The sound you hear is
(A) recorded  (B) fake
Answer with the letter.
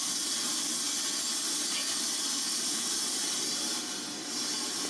A